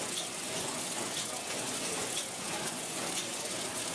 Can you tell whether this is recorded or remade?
remade